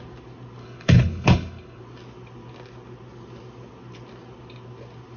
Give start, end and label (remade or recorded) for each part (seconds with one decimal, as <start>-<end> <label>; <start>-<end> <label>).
0.0-0.6 recorded; 0.6-1.8 remade; 1.8-5.2 recorded